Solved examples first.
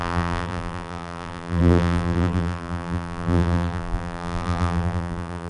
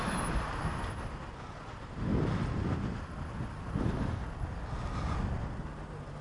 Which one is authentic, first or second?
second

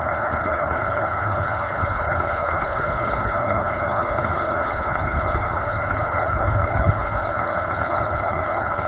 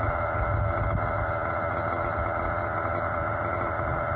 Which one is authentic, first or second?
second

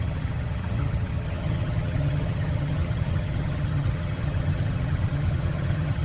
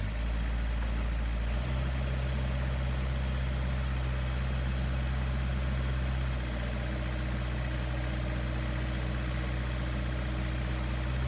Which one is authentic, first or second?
second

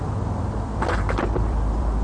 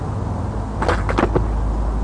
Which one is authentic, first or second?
second